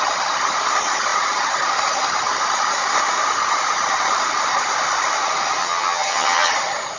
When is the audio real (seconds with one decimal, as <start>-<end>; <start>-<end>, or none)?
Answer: 0.0-5.6; 6.5-7.0

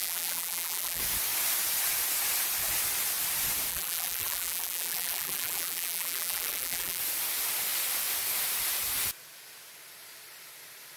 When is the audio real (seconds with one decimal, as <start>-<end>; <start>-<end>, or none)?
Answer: 1.0-3.7; 7.0-11.0

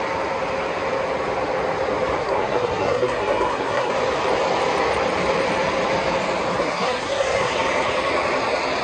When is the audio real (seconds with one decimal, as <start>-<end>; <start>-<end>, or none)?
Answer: 0.0-2.2; 3.9-6.6; 7.5-8.8

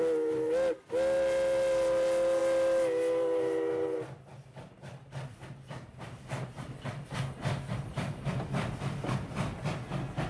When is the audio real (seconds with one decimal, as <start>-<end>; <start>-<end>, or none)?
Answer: 0.0-10.3

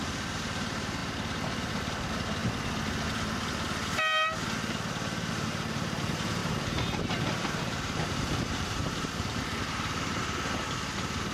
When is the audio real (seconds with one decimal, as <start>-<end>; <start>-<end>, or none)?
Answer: 2.4-5.3; 10.2-11.3

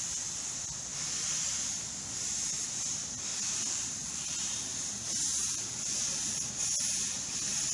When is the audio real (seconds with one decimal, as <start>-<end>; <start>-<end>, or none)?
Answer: 0.0-3.3; 6.5-7.7

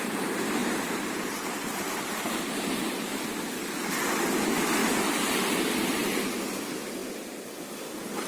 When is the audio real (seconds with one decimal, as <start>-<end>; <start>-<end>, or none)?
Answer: 0.0-0.6; 3.1-8.3

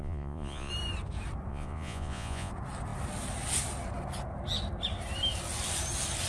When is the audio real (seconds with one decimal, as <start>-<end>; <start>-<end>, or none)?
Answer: 0.7-1.5; 2.5-6.3